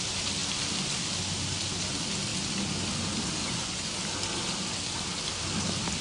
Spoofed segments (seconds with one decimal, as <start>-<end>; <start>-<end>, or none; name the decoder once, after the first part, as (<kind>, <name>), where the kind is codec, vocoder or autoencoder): 3.4-3.9 (vocoder, Vocos)